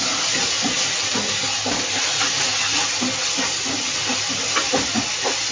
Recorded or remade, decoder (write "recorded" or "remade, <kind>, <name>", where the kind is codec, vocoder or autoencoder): recorded